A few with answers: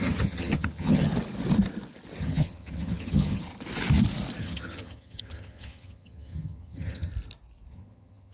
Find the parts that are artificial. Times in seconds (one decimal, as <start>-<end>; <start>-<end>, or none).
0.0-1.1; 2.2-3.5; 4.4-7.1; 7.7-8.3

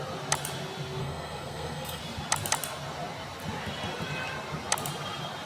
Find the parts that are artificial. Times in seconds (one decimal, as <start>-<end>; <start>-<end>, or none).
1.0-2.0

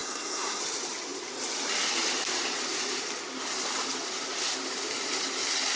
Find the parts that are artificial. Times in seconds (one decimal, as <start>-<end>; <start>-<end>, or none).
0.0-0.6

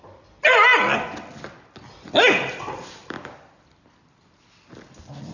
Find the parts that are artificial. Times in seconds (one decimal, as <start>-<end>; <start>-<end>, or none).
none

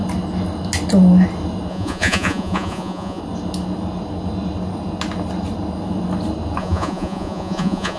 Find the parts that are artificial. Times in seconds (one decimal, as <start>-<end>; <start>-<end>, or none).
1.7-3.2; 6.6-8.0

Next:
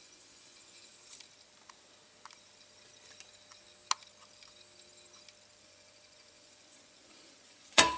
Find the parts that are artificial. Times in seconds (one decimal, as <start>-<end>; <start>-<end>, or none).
0.0-0.9; 5.6-8.0

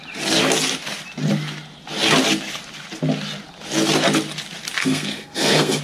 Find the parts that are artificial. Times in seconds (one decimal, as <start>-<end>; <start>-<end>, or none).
4.8-5.8